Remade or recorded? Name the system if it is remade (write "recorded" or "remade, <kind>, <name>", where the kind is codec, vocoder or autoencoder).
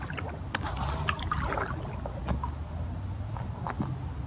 recorded